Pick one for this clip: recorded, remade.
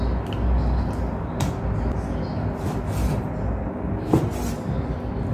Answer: recorded